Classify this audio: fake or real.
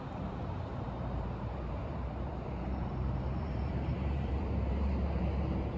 fake